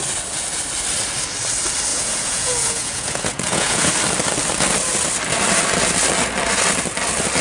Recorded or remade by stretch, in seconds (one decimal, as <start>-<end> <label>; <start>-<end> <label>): 0.0-1.9 recorded; 1.9-3.9 remade; 3.9-7.4 recorded